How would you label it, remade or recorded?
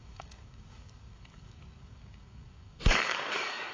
remade